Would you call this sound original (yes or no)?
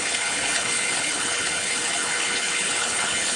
no